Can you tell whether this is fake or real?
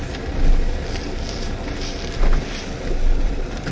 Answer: real